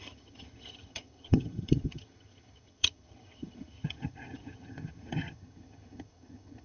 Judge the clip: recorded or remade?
remade